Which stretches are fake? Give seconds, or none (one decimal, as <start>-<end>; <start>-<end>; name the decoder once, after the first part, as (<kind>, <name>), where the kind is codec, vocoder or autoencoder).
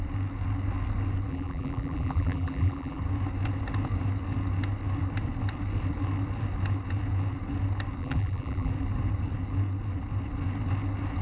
1.3-3.0 (vocoder, BigVGAN v2); 8.0-8.7